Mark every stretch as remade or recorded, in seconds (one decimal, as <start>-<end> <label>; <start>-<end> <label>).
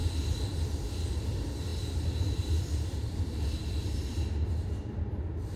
0.0-5.6 recorded